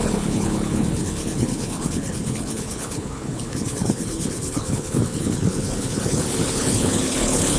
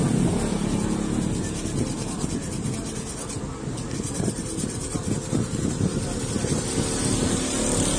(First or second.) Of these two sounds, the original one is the second